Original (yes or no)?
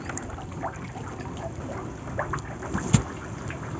yes